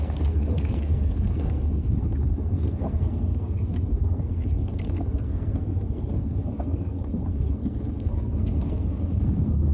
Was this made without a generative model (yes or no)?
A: no